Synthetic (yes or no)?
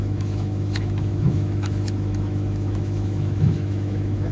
yes